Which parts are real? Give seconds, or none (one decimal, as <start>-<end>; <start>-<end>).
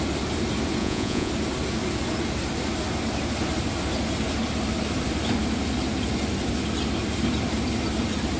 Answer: 0.0-0.8; 1.3-8.4